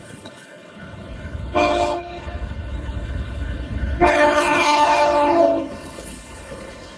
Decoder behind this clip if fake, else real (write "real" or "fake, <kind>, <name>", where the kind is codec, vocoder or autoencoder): fake, codec, HILCodec